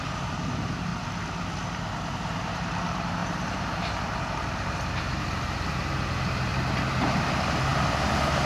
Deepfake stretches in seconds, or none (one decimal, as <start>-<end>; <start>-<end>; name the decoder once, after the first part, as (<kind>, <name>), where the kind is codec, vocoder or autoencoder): 0.0-0.9 (vocoder, BigVGAN v2); 1.6-6.5; 7.0-8.5